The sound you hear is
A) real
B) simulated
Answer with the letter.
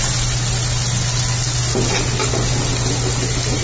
A